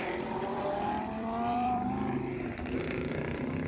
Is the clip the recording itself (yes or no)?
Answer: no